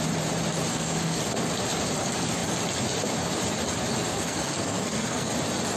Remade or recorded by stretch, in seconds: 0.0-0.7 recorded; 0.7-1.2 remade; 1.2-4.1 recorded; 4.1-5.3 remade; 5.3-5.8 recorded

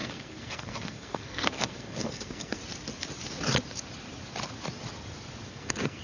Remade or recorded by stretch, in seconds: 0.0-2.6 remade; 2.6-5.5 recorded; 5.5-6.0 remade